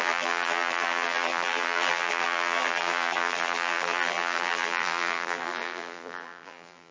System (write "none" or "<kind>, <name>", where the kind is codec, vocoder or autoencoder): vocoder, BigVGAN v2